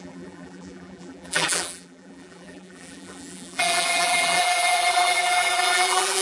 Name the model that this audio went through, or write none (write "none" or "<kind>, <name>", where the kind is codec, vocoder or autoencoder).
vocoder, BigVGAN v2